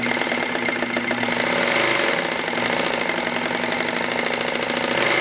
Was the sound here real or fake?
real